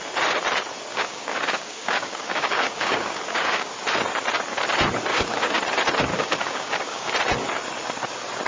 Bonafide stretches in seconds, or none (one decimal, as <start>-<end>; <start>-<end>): 0.0-0.9; 3.7-5.1; 5.6-6.1; 7.1-8.5

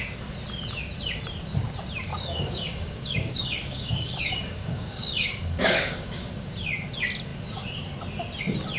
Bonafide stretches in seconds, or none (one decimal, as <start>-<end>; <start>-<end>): 0.0-2.1; 6.5-8.8

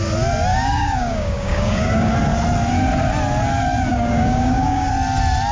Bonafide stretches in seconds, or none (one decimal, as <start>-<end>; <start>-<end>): 0.0-0.5; 2.1-3.9; 4.9-5.5

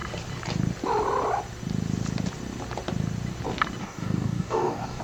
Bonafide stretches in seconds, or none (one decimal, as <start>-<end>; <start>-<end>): 0.0-3.8

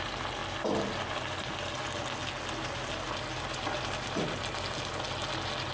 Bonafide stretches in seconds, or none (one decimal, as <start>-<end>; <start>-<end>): 0.0-5.7